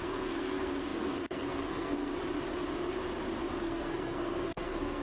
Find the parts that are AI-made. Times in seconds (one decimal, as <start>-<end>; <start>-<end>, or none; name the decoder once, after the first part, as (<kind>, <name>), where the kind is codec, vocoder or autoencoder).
0.0-2.1 (codec, SNAC); 3.6-5.0